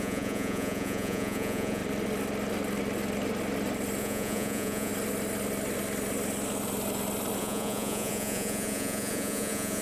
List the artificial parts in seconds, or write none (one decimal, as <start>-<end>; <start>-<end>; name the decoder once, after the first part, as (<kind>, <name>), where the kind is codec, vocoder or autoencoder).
0.0-1.8 (vocoder, Vocos); 4.0-4.9; 7.4-9.8